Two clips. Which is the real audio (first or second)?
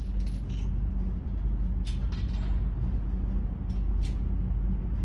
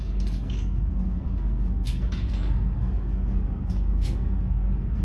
first